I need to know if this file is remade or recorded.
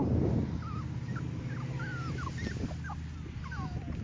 recorded